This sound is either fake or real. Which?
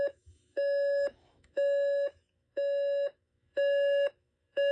fake